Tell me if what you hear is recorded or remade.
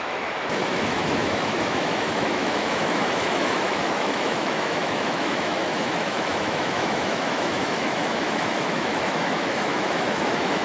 remade